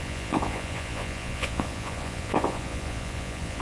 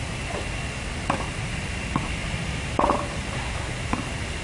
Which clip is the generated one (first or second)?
first